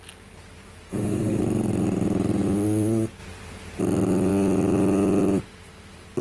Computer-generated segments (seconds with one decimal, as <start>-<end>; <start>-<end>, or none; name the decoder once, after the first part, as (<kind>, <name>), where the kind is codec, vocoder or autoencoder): 0.9-1.4 (autoencoder, DAC-VAE)